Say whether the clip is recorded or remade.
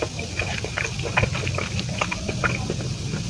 recorded